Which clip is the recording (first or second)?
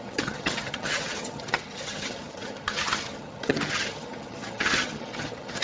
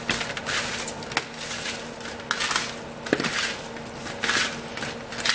second